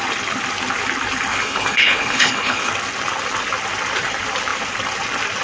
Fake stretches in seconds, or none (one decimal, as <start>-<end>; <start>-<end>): 1.3-2.7